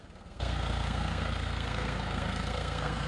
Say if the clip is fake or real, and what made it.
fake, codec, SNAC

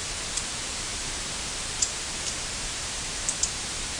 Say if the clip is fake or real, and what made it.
fake, vocoder, BigVGAN v2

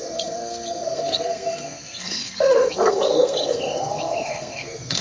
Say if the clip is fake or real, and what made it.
fake, codec, SNAC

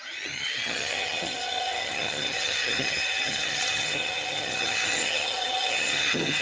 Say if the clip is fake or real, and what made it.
fake, vocoder, HiFi-GAN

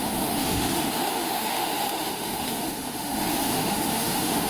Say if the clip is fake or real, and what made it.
fake, autoencoder, DAC-VAE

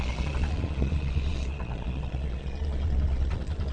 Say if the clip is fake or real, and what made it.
fake, vocoder, Vocos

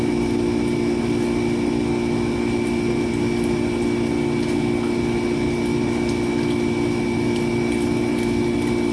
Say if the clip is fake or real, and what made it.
real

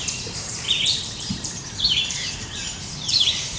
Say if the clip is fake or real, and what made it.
fake, vocoder, BigVGAN v2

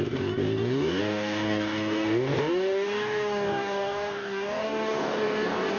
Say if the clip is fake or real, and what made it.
fake, codec, DAC